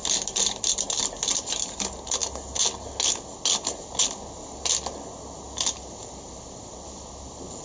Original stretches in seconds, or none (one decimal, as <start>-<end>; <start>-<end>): 0.0-7.6